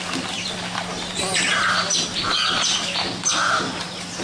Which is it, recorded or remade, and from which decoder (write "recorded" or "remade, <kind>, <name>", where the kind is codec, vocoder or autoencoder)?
remade, vocoder, BigVGAN v2